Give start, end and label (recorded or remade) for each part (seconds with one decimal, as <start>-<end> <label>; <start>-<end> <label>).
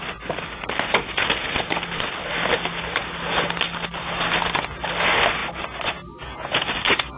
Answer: 0.0-7.2 recorded